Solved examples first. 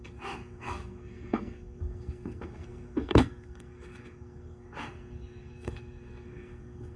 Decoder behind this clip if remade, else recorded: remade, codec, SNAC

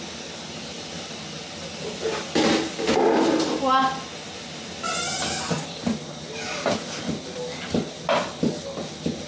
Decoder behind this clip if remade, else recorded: recorded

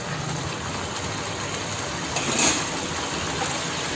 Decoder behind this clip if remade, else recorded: recorded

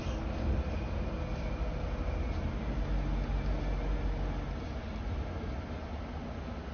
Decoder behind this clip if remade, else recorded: recorded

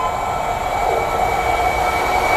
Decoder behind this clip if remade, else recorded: recorded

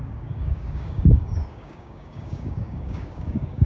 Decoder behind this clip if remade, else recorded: remade, codec, DAC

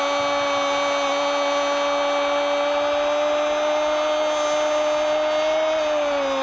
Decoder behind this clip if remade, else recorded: recorded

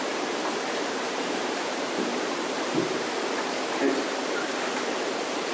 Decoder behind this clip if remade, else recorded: remade, vocoder, BigVGAN v2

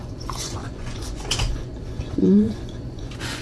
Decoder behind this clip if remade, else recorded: remade, vocoder, Vocos